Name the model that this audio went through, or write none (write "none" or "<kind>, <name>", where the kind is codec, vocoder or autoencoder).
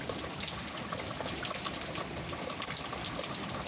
none